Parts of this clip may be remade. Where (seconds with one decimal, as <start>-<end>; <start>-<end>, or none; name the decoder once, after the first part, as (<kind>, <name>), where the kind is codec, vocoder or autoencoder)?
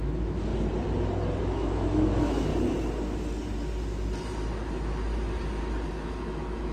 0.0-0.5 (autoencoder, DAC-VAE); 1.4-2.5; 5.9-6.7